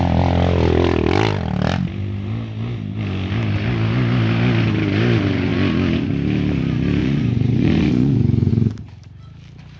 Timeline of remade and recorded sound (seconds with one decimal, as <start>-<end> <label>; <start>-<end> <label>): 0.0-7.0 recorded; 7.0-8.5 remade; 8.5-9.8 recorded